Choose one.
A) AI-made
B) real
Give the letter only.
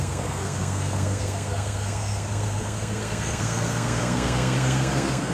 A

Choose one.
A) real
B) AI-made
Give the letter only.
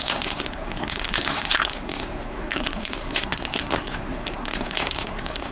B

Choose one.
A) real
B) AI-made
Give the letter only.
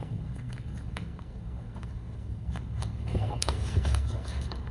B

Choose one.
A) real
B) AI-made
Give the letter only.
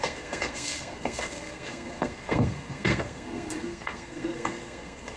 B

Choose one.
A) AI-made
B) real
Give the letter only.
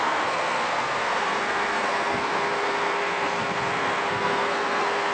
A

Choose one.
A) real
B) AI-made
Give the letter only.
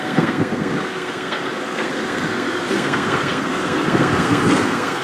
B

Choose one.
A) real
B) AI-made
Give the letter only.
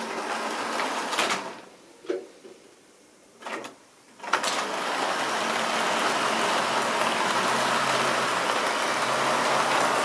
A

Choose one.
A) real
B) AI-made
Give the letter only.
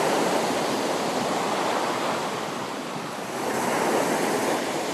A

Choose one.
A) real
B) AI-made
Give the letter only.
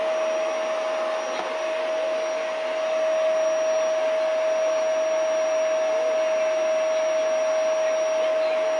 A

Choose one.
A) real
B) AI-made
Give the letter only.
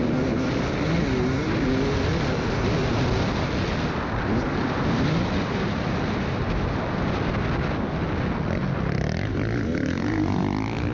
A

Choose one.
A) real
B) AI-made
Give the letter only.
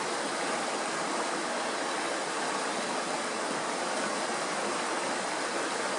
A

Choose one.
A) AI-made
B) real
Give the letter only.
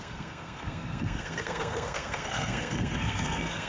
A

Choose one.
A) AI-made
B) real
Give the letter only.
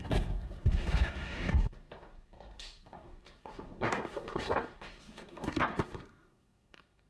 A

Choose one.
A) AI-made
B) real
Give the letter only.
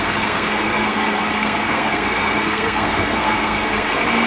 A